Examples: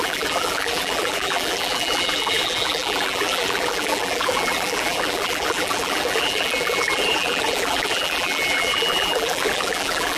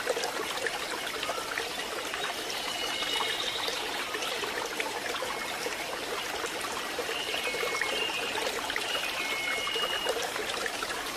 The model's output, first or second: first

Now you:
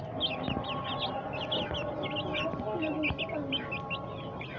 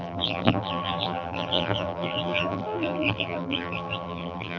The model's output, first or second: second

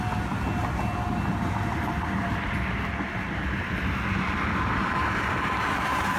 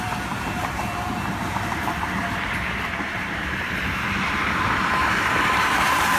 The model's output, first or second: second